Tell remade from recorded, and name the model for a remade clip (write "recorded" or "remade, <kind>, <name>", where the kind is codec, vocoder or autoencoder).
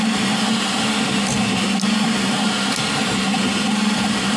remade, vocoder, BigVGAN v2